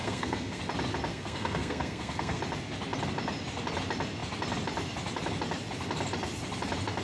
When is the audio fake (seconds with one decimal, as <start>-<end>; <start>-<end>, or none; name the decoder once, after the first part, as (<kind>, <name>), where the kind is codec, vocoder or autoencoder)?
0.0-0.6 (codec, SNAC); 1.1-2.4